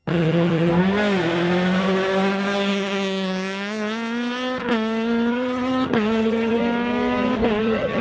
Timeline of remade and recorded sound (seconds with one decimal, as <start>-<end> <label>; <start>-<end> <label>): 0.0-0.7 remade; 0.7-5.3 recorded; 5.3-6.6 remade; 6.6-7.6 recorded; 7.6-8.0 remade

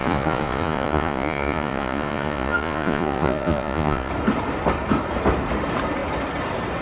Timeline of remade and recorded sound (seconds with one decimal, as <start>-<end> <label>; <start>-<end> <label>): 0.0-4.1 remade; 4.1-6.8 recorded

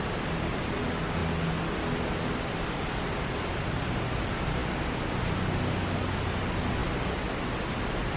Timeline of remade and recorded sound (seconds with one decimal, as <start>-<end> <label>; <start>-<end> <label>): 0.0-8.2 recorded

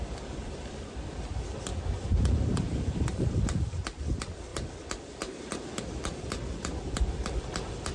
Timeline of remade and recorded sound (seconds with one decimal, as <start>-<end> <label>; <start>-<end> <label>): 0.0-1.7 remade; 1.7-2.3 recorded; 2.3-7.9 remade

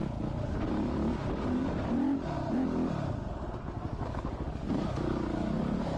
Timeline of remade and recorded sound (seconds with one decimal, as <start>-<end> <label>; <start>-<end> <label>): 0.0-0.7 recorded; 0.7-1.6 remade; 1.6-3.6 recorded; 3.6-6.0 remade

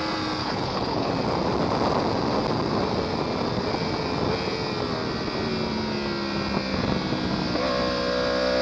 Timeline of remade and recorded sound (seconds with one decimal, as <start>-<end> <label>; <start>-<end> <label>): 0.0-0.4 recorded; 0.4-1.1 remade; 1.1-8.6 recorded